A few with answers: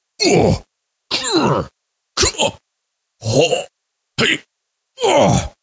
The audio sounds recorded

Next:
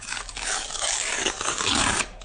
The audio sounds remade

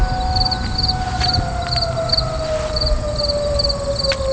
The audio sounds recorded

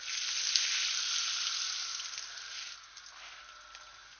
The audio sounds recorded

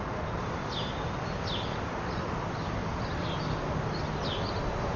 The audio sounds recorded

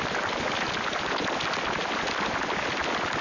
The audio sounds recorded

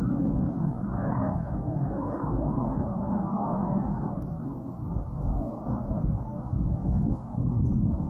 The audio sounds remade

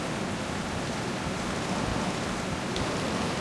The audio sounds recorded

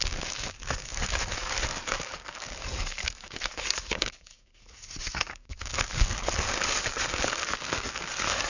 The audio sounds remade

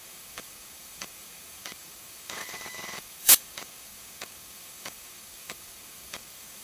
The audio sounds remade